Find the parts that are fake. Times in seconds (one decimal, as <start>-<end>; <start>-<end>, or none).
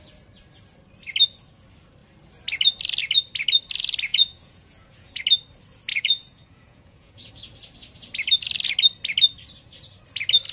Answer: 4.1-5.2; 5.9-7.3